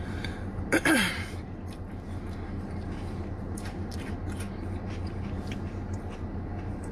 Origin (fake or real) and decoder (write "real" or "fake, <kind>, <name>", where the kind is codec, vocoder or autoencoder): fake, vocoder, BigVGAN v2